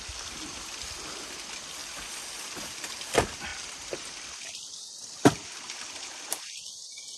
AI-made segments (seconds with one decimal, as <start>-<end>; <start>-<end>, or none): 3.5-5.1